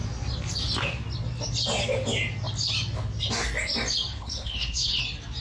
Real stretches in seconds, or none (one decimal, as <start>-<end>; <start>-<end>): 0.0-4.1; 5.0-5.4

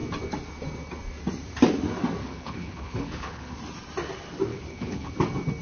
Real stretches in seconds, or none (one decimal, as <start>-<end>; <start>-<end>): 0.0-2.2; 3.5-4.5; 5.1-5.6

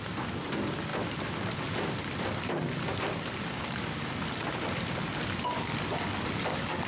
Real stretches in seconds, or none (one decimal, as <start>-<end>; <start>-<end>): 0.0-6.9

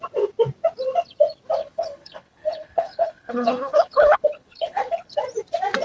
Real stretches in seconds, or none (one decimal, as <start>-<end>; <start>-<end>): 0.0-1.6; 5.1-5.8

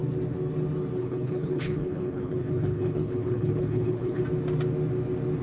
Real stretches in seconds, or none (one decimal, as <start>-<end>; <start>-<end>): 0.0-1.0; 4.2-5.4